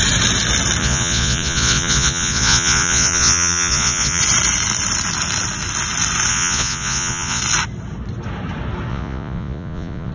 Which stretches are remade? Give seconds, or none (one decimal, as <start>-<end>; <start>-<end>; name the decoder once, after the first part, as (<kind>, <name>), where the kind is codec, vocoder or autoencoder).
0.8-4.2 (vocoder, Vocos); 6.3-7.4; 8.9-10.1